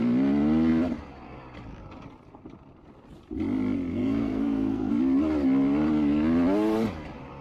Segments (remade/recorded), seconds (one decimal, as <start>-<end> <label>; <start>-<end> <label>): 0.0-3.9 recorded; 3.9-4.9 remade; 4.9-7.4 recorded